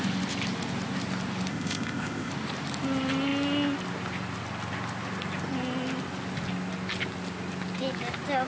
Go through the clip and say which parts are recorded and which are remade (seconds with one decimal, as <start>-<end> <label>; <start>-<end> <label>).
0.0-1.5 recorded; 1.5-2.3 remade; 2.3-8.5 recorded